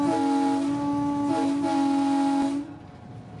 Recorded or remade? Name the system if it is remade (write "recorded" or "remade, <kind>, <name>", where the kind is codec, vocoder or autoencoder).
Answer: recorded